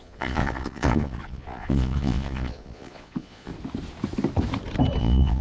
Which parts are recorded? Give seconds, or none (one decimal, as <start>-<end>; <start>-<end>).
3.5-5.0